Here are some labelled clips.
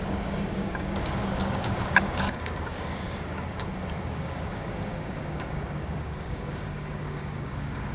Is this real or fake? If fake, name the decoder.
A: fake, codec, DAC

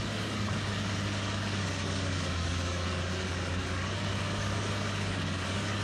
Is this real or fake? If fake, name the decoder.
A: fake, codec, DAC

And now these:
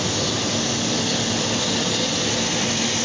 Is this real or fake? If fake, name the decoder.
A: real